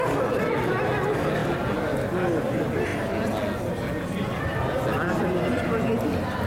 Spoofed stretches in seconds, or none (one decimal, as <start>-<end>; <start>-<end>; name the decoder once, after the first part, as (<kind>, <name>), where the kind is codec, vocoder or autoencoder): none